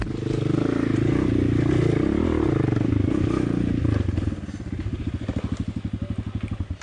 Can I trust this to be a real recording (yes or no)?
yes